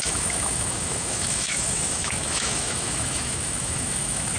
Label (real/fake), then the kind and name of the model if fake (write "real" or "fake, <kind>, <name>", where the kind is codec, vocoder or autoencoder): fake, autoencoder, DAC-VAE